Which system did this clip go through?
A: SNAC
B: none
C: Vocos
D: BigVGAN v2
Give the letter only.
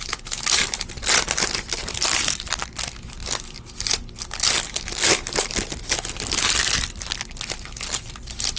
B